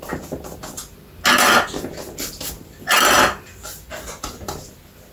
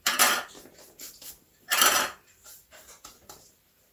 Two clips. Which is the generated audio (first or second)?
second